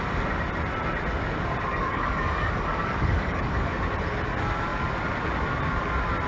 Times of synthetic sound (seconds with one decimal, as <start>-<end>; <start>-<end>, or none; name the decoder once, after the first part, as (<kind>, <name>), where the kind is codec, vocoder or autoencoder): 1.7-3.7 (codec, DAC)